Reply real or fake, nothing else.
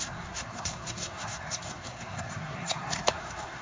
fake